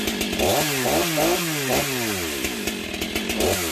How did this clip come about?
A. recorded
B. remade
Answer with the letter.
A